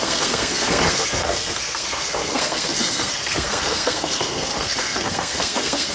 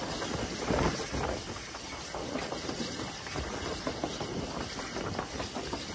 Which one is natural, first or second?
second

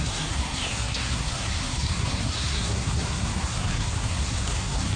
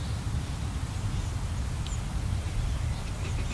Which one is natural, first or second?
second